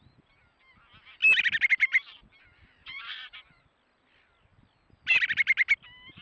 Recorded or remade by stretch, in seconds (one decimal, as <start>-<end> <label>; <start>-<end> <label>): 0.0-2.8 recorded; 2.8-3.6 remade; 3.6-6.2 recorded